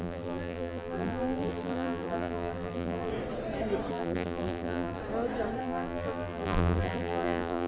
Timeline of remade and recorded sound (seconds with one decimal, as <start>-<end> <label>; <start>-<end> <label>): 0.0-3.1 remade; 3.1-3.9 recorded; 3.9-5.0 remade; 5.0-5.6 recorded; 5.6-7.7 remade